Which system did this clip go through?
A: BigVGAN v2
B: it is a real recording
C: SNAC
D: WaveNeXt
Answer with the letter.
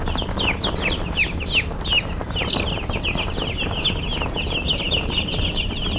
B